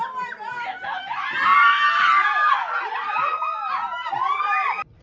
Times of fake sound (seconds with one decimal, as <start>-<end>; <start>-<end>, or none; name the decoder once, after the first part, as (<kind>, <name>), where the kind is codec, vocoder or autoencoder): none